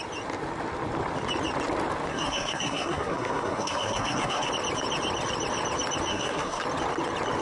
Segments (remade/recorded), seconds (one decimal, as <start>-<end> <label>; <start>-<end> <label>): 0.0-2.1 recorded; 2.1-4.5 remade; 4.5-6.1 recorded; 6.1-6.6 remade; 6.6-7.4 recorded